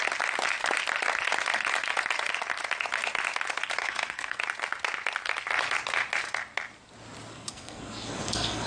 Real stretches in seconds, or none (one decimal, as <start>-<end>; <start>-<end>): 0.0-3.8; 4.4-7.3